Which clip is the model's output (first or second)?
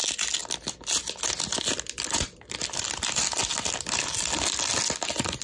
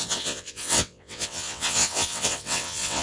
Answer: second